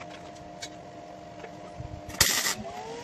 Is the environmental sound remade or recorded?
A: recorded